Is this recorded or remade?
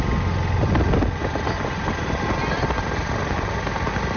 recorded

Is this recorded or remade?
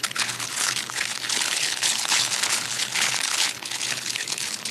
remade